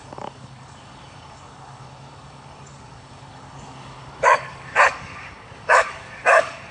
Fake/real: fake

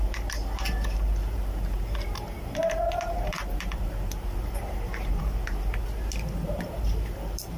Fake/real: fake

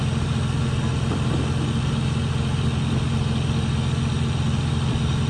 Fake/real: real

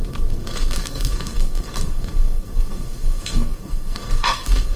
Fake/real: fake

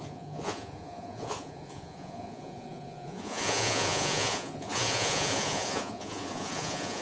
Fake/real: fake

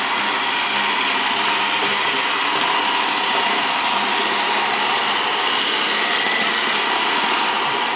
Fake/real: real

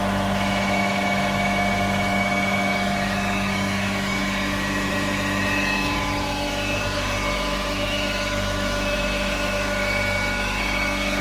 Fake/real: fake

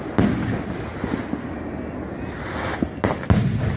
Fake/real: real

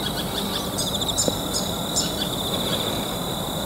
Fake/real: fake